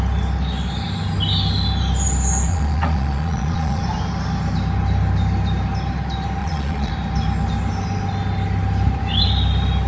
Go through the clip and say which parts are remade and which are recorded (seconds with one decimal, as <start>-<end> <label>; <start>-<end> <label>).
0.0-2.5 recorded; 2.5-3.8 remade; 3.8-6.4 recorded; 6.4-6.9 remade; 6.9-9.9 recorded